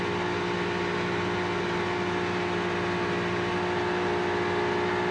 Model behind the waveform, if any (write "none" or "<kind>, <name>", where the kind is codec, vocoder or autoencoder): none